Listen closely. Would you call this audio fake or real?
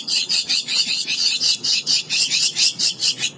fake